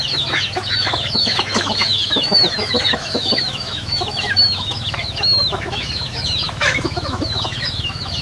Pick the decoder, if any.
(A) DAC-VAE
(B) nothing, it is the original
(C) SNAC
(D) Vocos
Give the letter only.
A